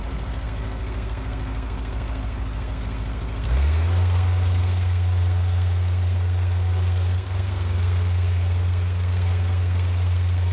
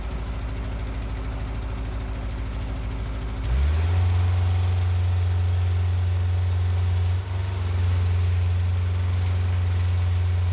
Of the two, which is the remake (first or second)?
first